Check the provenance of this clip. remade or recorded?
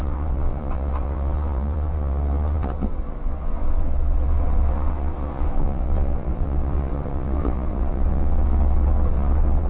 remade